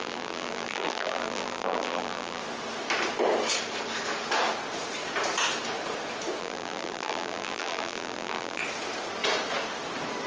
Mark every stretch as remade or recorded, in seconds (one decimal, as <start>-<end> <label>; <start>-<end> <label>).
0.0-2.4 remade; 2.4-6.4 recorded; 6.4-8.6 remade; 8.6-10.3 recorded